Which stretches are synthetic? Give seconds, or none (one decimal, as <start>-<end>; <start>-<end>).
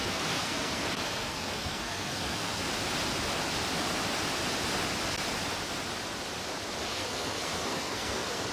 0.0-2.6; 6.8-8.5